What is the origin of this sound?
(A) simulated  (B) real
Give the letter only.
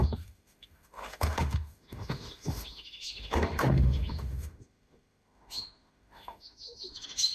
A